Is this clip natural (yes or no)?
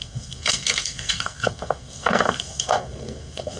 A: no